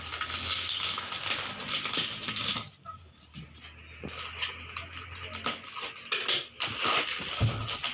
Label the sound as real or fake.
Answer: real